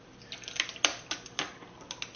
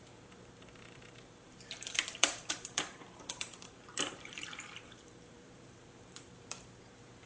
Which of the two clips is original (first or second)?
first